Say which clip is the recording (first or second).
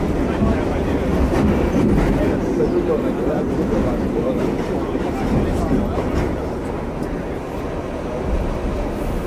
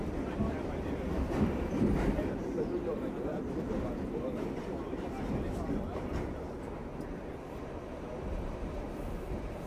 first